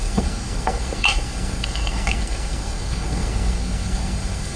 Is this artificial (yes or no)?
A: yes